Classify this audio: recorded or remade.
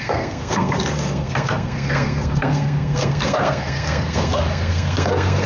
remade